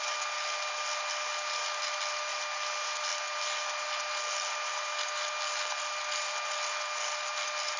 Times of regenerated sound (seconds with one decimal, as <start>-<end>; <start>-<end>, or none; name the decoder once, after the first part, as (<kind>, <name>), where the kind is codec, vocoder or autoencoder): none